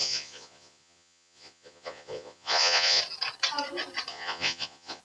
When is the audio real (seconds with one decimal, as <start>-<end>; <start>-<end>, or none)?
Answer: 3.0-4.1